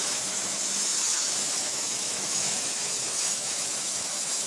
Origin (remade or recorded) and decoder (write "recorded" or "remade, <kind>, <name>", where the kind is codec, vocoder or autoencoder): remade, autoencoder, DAC-VAE